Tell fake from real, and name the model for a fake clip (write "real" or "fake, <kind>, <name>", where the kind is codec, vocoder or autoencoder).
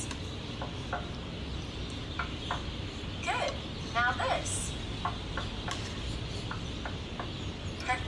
real